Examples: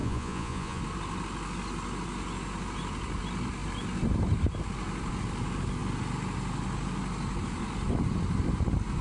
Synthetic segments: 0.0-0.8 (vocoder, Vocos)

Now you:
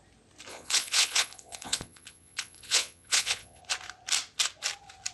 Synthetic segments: 0.5-3.6 (vocoder, Vocos)